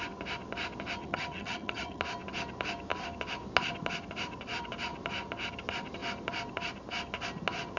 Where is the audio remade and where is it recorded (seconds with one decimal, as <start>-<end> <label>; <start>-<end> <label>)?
0.0-1.0 recorded; 1.0-2.0 remade; 2.0-7.8 recorded